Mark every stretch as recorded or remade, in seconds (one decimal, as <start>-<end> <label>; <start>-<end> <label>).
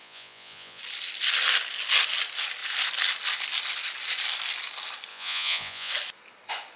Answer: 0.0-0.8 remade; 0.8-5.1 recorded; 5.1-5.9 remade; 5.9-6.8 recorded